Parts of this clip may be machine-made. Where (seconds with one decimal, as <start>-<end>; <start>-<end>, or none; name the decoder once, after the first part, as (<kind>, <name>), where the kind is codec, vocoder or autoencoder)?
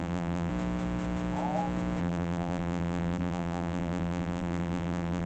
0.0-0.5 (vocoder, BigVGAN v2); 2.0-5.3